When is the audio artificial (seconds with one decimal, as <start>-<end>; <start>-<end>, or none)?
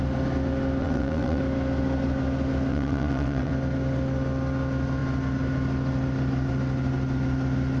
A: 0.8-1.4; 2.7-3.5